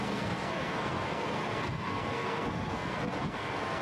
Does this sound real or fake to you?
fake